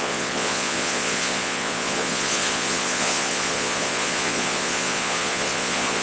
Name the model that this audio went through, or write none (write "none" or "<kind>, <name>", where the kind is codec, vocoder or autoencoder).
vocoder, Vocos